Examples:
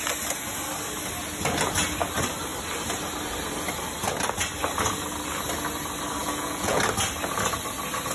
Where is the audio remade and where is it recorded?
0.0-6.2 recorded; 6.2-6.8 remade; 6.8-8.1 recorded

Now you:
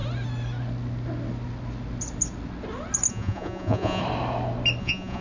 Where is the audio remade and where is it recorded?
0.0-3.1 recorded; 3.1-4.0 remade; 4.0-4.8 recorded; 4.8-5.2 remade

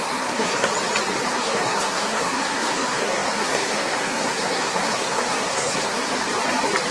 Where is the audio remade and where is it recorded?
0.0-0.7 remade; 0.7-1.3 recorded; 1.3-6.1 remade; 6.1-6.9 recorded

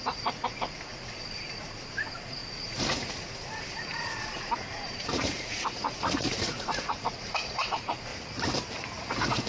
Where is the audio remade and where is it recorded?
0.0-8.1 remade; 8.1-9.1 recorded; 9.1-9.5 remade